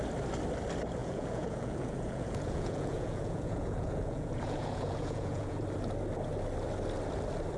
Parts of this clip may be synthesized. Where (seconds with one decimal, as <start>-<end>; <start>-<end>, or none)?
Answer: 1.0-5.6